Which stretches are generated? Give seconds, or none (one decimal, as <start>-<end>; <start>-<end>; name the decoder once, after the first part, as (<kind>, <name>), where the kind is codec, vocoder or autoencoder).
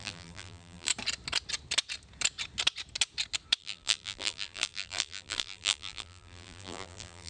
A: 0.0-0.9 (vocoder, BigVGAN v2); 3.6-7.3